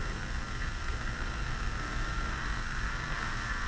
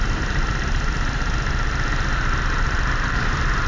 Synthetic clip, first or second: first